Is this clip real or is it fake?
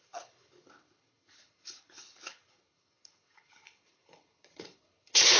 fake